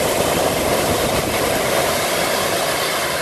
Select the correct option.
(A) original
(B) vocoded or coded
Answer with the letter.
B